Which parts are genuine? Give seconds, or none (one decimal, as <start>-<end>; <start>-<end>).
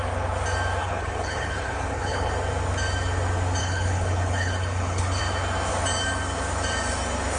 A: 0.0-0.8; 2.3-3.6; 5.2-7.4